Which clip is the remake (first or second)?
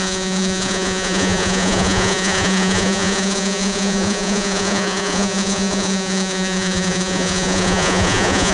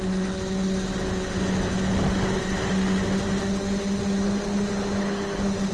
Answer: first